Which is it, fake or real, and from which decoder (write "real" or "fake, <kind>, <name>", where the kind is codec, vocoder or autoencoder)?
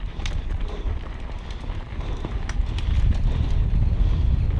real